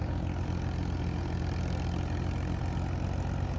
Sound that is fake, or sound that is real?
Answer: real